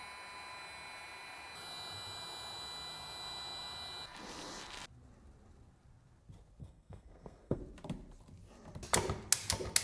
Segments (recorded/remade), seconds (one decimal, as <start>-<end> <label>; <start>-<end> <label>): 0.0-6.6 recorded; 6.6-7.6 remade; 7.6-9.8 recorded